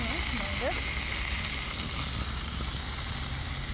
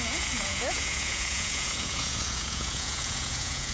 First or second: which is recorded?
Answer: first